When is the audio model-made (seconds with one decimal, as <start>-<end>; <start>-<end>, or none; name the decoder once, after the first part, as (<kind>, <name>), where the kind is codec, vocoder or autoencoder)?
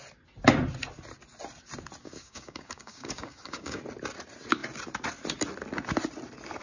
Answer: 2.0-3.8 (codec, DAC)